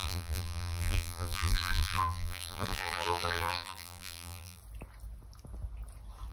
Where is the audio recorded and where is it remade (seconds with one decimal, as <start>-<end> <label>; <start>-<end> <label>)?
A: 0.0-4.6 remade; 4.6-6.3 recorded